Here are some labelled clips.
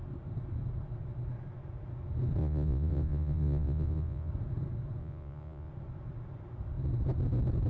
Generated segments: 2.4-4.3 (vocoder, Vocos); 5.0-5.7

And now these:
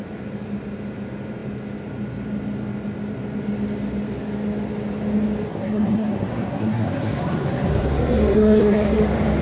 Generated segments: 5.5-9.0 (codec, SNAC)

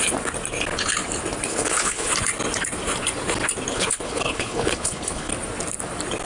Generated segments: 1.5-2.1 (codec, HILCodec); 3.7-5.3

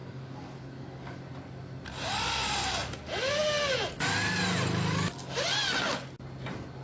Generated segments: 0.0-1.2 (codec, DAC)

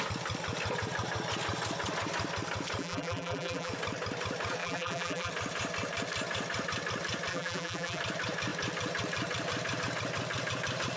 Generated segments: 2.8-3.7 (vocoder, BigVGAN v2); 4.6-5.3; 7.3-8.0

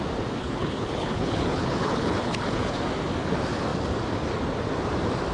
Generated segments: 0.4-2.8 (codec, HILCodec)